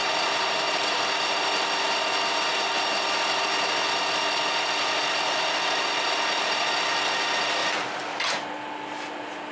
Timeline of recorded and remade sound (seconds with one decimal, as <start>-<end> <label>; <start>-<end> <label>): 0.0-0.9 remade; 0.9-7.6 recorded; 7.6-8.5 remade; 8.5-9.5 recorded

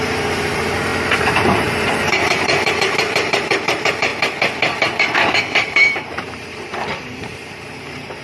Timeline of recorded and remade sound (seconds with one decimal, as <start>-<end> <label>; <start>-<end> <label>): 0.0-4.1 remade; 4.1-5.3 recorded; 5.3-8.2 remade

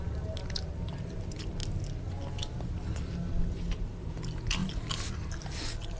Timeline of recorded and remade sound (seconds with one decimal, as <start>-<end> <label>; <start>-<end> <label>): 0.0-6.0 recorded

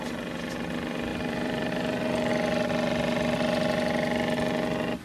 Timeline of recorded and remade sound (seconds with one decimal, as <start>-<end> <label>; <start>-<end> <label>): 0.0-1.1 recorded; 1.1-2.3 remade; 2.3-5.0 recorded

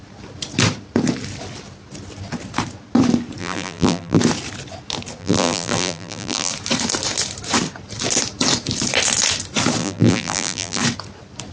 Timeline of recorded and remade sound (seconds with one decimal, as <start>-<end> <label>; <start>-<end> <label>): 0.0-3.4 recorded; 3.4-4.2 remade; 4.2-5.2 recorded; 5.2-6.5 remade; 6.5-9.8 recorded; 9.8-10.8 remade; 10.8-11.5 recorded

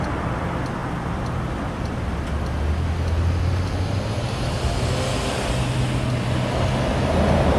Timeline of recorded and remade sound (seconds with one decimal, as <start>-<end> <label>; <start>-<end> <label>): 0.0-7.6 recorded

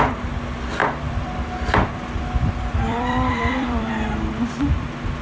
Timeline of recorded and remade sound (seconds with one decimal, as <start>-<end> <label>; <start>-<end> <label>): 0.0-0.8 recorded; 0.8-3.9 remade; 3.9-5.2 recorded